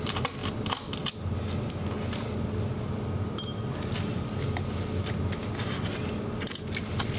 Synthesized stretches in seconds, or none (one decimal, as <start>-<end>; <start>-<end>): none